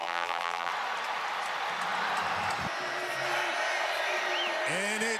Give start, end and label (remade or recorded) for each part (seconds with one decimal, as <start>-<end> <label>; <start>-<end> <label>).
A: 0.0-0.7 remade; 0.7-5.2 recorded